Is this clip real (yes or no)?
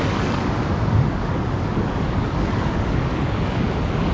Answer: no